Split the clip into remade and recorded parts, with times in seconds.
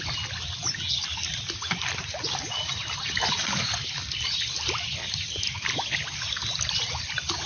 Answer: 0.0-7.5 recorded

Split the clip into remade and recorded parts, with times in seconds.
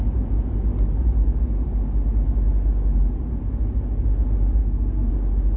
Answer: 0.0-4.6 recorded; 4.6-5.1 remade; 5.1-5.6 recorded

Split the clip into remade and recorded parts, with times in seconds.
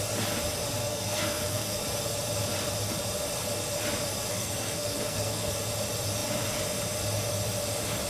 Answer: 0.0-0.8 recorded; 0.8-1.8 remade; 1.8-4.3 recorded; 4.3-5.5 remade; 5.5-8.1 recorded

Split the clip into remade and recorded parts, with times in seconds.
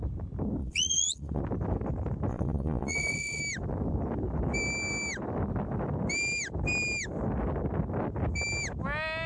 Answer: 0.0-0.6 recorded; 0.6-1.4 remade; 1.4-2.3 recorded; 2.3-3.4 remade; 3.4-9.3 recorded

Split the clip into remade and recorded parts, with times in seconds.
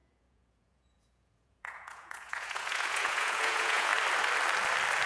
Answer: 0.0-3.9 remade; 3.9-5.1 recorded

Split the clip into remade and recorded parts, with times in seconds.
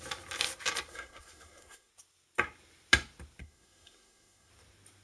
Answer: 0.0-0.9 recorded; 0.9-1.9 remade; 1.9-3.4 recorded; 3.4-4.5 remade; 4.5-5.0 recorded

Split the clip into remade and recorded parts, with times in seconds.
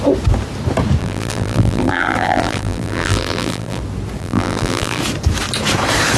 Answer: 0.0-1.0 recorded; 1.0-3.8 remade; 3.8-4.2 recorded; 4.2-5.0 remade; 5.0-6.2 recorded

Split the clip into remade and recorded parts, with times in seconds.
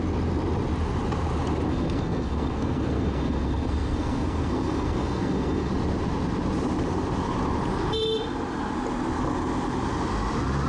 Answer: 0.0-1.7 recorded; 1.7-5.7 remade; 5.7-10.7 recorded